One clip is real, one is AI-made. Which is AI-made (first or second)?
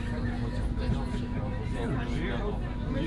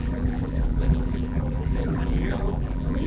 second